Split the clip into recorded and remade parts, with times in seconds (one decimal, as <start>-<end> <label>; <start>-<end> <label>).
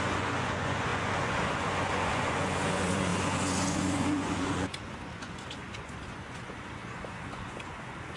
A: 0.0-8.2 remade